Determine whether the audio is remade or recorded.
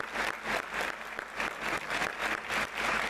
recorded